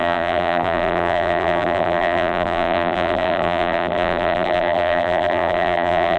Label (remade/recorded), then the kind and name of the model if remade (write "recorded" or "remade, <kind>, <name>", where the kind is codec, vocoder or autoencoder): remade, vocoder, BigVGAN v2